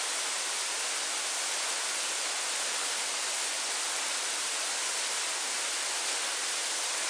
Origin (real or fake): real